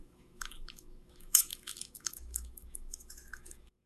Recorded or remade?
remade